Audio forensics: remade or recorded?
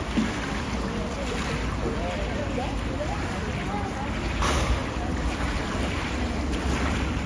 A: recorded